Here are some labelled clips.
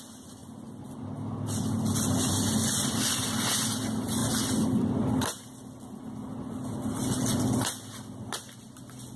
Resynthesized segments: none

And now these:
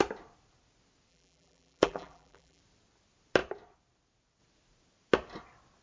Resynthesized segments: 1.1-2.6 (vocoder, BigVGAN v2)

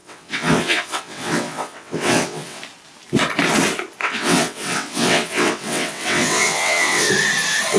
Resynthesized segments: 0.0-2.6 (vocoder, WaveNeXt); 4.0-7.1

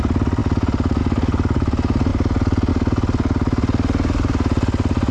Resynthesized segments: none

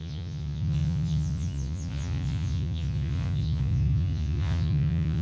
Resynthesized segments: 0.0-5.2 (vocoder, Vocos)

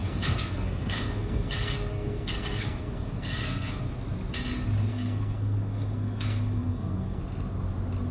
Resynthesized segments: 0.0-3.8 (codec, SNAC); 4.9-7.2

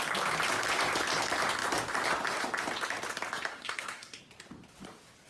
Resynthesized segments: 3.5-4.2 (codec, SNAC)

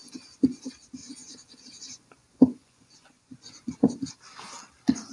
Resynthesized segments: 0.0-0.6 (vocoder, Vocos); 1.0-4.1